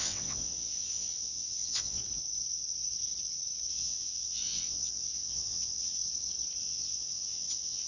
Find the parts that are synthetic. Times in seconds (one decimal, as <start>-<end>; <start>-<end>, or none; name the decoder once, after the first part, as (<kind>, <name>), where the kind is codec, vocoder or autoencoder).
0.0-2.0 (vocoder, WaveNeXt); 3.7-6.0; 6.6-7.9